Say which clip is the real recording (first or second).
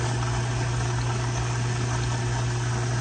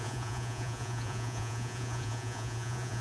first